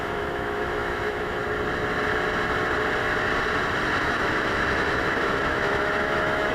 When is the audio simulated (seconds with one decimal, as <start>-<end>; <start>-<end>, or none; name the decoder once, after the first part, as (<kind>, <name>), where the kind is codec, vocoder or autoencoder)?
0.0-1.4 (autoencoder, DAC-VAE); 4.0-6.5